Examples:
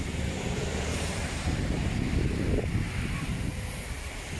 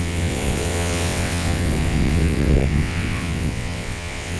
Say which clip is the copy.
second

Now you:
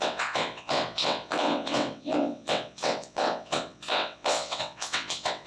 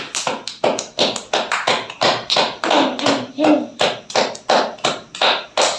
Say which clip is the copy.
first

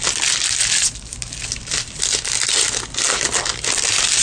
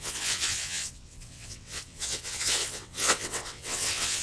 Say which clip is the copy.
second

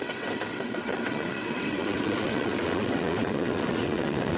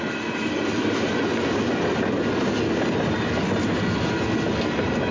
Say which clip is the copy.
first